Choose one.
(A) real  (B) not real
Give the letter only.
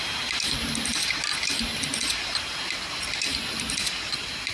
A